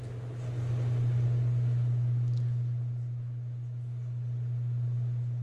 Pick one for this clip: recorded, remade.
recorded